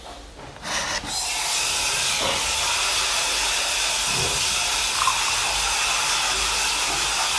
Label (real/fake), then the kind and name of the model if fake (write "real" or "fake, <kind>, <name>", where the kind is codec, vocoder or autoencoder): real